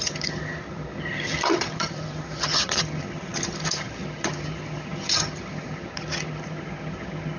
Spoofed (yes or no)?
yes